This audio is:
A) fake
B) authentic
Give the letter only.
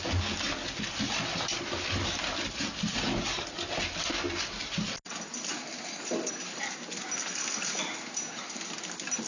B